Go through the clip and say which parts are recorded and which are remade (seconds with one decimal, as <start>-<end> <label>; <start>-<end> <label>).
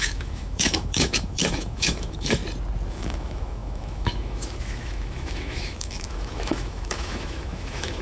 0.0-2.4 remade; 2.4-2.9 recorded; 2.9-8.0 remade